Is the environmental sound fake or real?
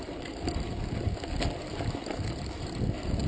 real